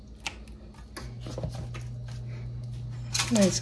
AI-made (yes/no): no